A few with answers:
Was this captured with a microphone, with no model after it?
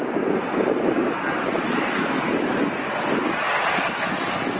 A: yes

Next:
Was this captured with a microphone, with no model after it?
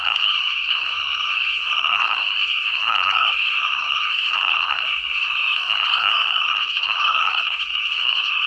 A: no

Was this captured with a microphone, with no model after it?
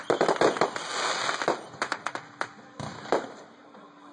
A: yes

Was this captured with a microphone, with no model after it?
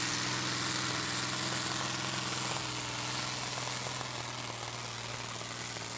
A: yes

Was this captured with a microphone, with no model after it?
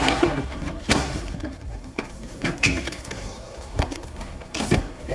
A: no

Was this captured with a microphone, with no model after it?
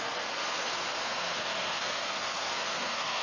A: no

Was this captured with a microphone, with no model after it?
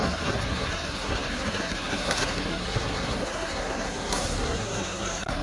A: no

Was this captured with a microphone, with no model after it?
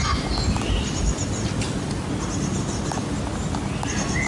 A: yes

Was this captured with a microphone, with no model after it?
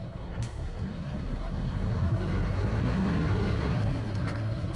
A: no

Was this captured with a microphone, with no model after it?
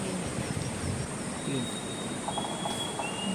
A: yes